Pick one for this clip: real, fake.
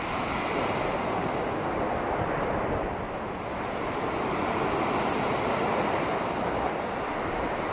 real